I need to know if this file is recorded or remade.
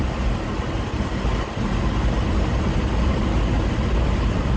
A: recorded